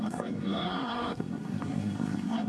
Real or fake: fake